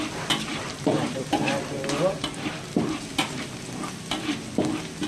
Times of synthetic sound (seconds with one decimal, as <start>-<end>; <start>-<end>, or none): 0.5-3.6

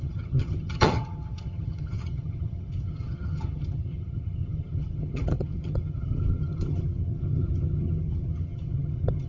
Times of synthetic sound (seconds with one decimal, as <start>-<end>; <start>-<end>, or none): 0.0-9.3

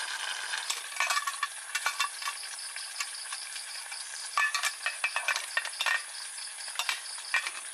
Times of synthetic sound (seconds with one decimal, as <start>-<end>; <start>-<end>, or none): 3.3-4.3